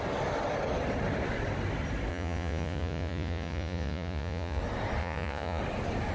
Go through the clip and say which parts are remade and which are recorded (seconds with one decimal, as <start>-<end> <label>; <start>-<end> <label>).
0.0-2.1 recorded; 2.1-4.6 remade; 4.6-5.0 recorded; 5.0-5.6 remade; 5.6-6.1 recorded